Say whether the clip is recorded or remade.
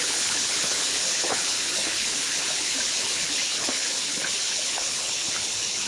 remade